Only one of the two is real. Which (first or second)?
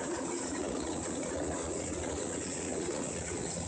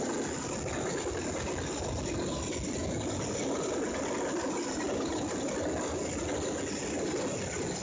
second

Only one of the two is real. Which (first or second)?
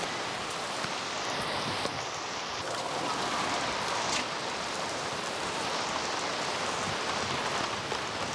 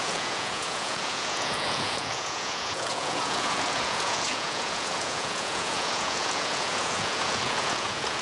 first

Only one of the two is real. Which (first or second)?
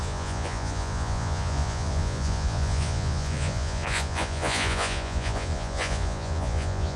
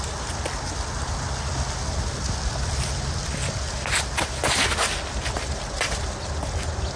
second